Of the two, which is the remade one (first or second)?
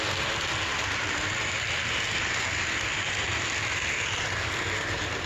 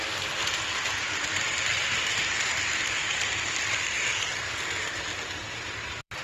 second